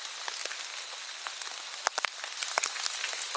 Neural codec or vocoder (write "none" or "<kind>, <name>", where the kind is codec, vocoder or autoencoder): none